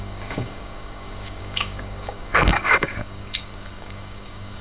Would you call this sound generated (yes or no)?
yes